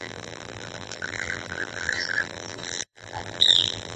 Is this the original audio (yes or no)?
no